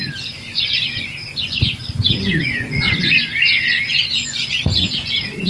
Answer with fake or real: fake